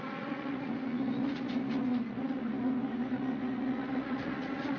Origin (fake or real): fake